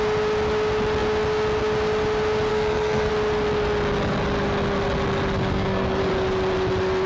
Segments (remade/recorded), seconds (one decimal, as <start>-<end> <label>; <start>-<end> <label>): 0.0-2.5 recorded; 2.5-3.1 remade; 3.1-5.4 recorded; 5.4-6.0 remade; 6.0-7.1 recorded